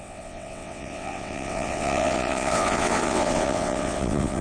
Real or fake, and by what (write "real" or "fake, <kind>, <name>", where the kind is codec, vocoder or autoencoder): fake, vocoder, WaveNeXt